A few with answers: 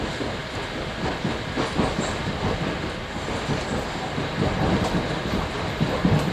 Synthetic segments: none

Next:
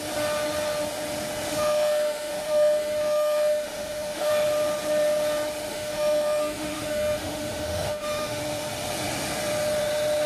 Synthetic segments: 1.5-4.3 (autoencoder, DAC-VAE); 5.7-8.4

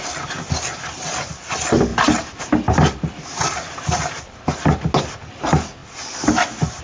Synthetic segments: none

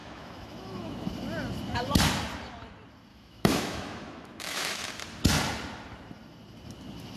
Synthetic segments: 0.0-1.1 (autoencoder, DAC-VAE); 3.1-4.9

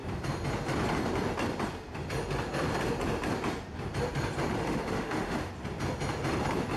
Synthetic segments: 4.6-5.5 (autoencoder, DAC-VAE)